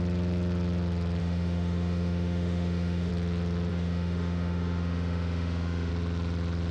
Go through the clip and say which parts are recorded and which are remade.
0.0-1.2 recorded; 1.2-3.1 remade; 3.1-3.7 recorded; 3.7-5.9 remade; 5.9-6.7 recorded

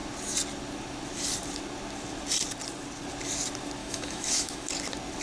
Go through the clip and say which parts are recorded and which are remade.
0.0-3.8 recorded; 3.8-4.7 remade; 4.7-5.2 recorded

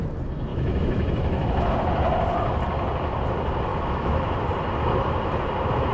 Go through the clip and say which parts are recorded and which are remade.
0.0-0.5 recorded; 0.5-1.7 remade; 1.7-3.7 recorded; 3.7-4.4 remade; 4.4-5.9 recorded

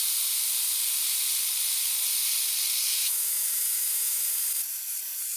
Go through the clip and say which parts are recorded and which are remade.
0.0-2.9 recorded; 2.9-4.3 remade; 4.3-5.4 recorded

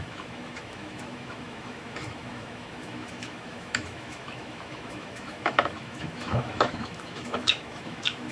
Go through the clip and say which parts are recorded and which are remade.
0.0-8.3 remade